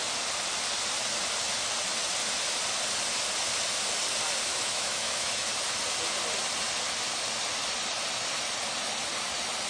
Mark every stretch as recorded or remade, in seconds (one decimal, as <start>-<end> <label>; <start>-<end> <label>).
0.0-4.5 recorded; 4.5-5.5 remade; 5.5-9.7 recorded